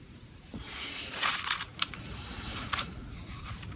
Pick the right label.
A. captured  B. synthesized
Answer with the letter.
B